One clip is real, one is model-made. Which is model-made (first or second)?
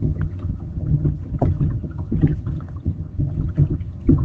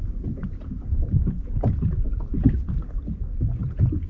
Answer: first